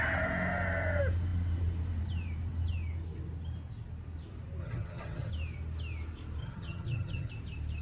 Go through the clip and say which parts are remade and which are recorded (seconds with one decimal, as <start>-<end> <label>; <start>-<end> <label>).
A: 0.0-4.6 recorded; 4.6-5.3 remade; 5.3-6.4 recorded; 6.4-7.3 remade; 7.3-7.8 recorded